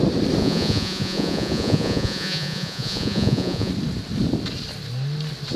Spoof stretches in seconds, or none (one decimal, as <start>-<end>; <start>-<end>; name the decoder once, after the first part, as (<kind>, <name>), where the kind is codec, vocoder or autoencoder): 0.4-3.7 (vocoder, Vocos)